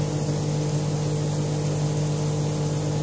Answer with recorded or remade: recorded